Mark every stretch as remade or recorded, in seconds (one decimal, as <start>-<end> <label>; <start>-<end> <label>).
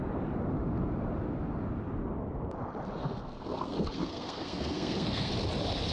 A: 0.0-3.0 recorded; 3.0-5.3 remade; 5.3-5.9 recorded